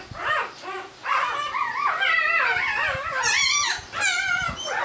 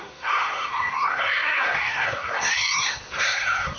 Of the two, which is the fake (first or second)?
second